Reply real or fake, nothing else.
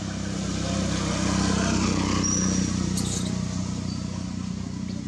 real